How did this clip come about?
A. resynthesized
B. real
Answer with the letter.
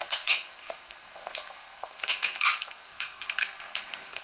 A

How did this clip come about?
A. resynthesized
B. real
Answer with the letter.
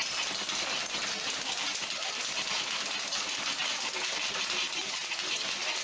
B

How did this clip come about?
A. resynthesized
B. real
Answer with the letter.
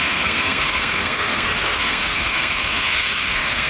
A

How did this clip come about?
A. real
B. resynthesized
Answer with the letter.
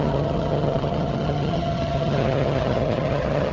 B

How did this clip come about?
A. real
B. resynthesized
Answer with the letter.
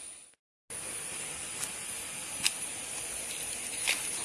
A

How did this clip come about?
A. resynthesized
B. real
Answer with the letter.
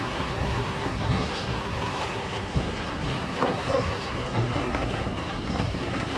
A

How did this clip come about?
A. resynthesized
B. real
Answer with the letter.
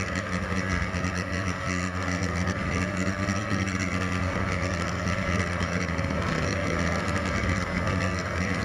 A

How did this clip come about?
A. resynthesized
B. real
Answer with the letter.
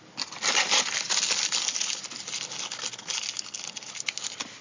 B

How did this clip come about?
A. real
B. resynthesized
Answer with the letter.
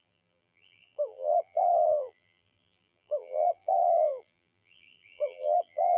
B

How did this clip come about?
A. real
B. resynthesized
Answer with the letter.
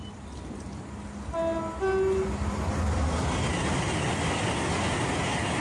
A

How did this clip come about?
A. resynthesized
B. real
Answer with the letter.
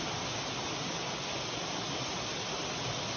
B